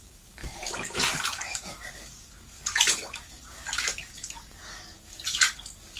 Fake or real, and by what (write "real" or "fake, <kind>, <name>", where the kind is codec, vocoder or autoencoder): fake, codec, DAC